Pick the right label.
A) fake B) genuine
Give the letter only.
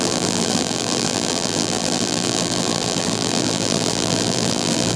A